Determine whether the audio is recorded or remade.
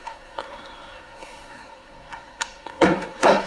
remade